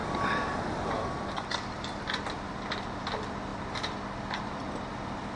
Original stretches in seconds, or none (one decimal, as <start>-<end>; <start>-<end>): 2.4-5.4